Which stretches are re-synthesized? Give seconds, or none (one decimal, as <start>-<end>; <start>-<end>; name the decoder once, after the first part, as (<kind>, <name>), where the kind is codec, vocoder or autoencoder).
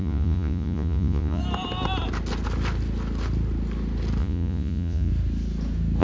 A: 0.0-1.4 (vocoder, Vocos); 4.2-5.1